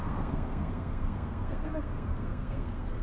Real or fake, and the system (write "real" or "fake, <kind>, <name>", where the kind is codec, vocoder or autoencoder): fake, codec, SNAC